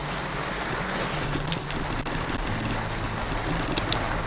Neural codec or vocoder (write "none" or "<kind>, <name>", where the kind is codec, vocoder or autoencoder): none